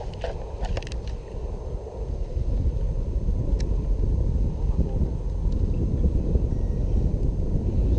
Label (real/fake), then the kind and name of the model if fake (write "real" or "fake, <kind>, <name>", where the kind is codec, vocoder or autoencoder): real